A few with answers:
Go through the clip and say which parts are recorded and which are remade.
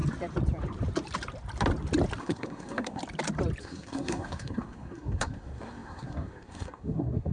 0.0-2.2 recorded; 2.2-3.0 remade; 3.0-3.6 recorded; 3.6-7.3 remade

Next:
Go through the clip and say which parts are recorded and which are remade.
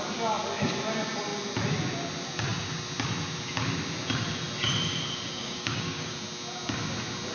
0.0-5.4 recorded; 5.4-6.1 remade; 6.1-7.3 recorded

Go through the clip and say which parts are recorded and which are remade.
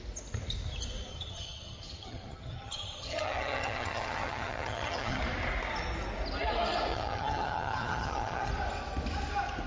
0.0-1.1 recorded; 1.1-5.2 remade; 5.2-6.9 recorded; 6.9-8.5 remade; 8.5-9.7 recorded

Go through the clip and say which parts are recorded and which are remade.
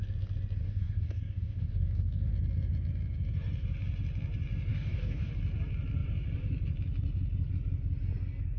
0.0-0.6 recorded; 0.6-2.3 remade; 2.3-4.7 recorded; 4.7-5.3 remade; 5.3-8.6 recorded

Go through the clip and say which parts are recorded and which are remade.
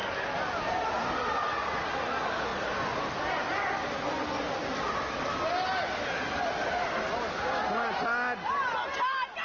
0.0-9.4 recorded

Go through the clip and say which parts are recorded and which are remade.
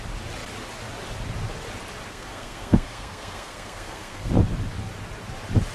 0.0-2.1 recorded; 2.1-4.3 remade; 4.3-5.7 recorded